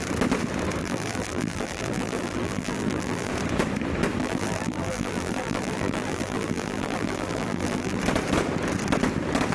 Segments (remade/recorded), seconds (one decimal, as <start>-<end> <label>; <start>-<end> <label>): 0.0-0.8 recorded; 0.8-3.3 remade; 3.3-4.2 recorded; 4.2-8.0 remade; 8.0-9.5 recorded